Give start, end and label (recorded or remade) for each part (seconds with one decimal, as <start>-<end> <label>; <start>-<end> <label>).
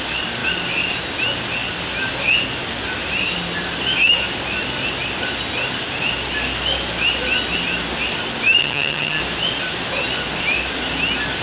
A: 0.0-8.6 recorded; 8.6-9.2 remade; 9.2-11.4 recorded